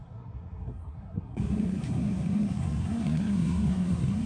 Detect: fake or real fake